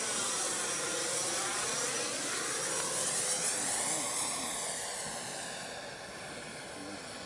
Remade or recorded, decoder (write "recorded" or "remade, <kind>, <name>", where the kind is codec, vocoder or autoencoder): recorded